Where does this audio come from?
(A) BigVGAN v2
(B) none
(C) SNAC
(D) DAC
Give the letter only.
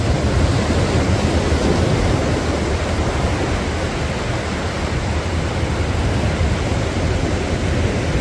B